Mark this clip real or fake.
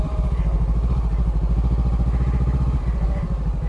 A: real